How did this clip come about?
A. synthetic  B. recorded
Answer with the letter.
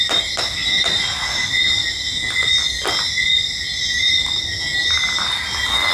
B